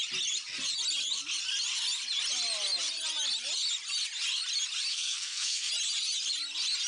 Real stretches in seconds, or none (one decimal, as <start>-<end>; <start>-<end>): 0.0-4.9; 5.7-6.9